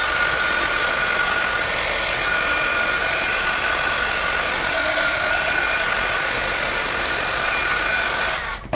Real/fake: real